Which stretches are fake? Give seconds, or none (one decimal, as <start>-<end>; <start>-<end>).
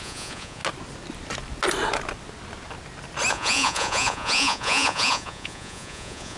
0.0-0.6; 3.3-6.4